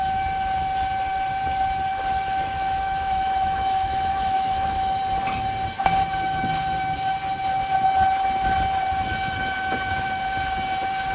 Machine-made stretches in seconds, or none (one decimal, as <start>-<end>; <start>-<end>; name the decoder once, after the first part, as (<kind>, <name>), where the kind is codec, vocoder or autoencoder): 1.9-5.0 (autoencoder, DAC-VAE)